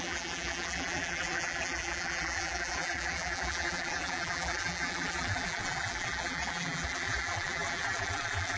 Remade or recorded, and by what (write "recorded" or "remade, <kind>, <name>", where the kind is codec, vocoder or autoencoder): remade, vocoder, BigVGAN v2